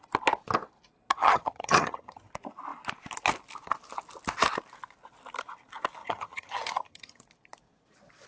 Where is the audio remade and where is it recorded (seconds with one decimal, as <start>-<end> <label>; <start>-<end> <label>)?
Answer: 0.0-1.2 recorded; 1.2-2.3 remade; 2.3-6.0 recorded; 6.0-7.2 remade; 7.2-8.3 recorded